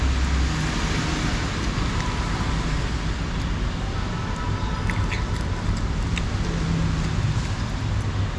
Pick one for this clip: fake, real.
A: real